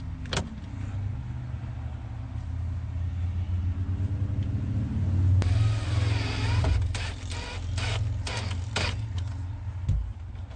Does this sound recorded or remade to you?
recorded